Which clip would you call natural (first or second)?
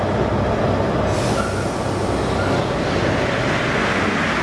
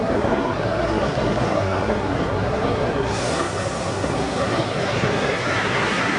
first